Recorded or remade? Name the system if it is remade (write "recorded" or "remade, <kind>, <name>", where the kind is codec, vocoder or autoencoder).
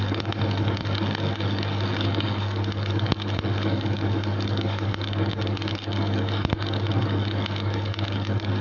remade, codec, DAC